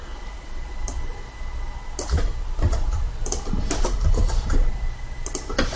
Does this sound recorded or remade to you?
recorded